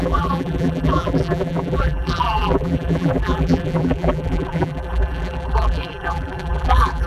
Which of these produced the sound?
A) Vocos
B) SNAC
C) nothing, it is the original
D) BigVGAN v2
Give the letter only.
D